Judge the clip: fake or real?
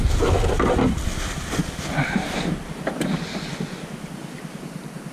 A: real